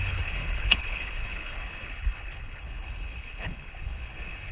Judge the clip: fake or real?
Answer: fake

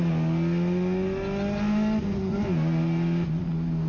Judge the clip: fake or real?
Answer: real